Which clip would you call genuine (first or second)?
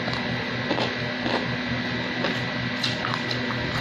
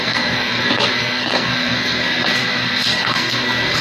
first